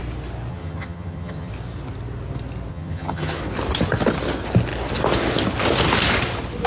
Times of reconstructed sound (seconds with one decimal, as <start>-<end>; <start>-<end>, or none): 0.5-1.5; 2.7-3.4